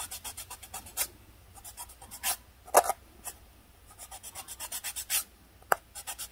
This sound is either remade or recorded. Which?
recorded